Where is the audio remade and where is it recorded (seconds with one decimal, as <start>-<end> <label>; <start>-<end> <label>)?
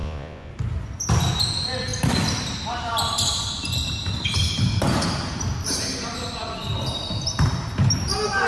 0.0-0.5 remade; 0.5-8.5 recorded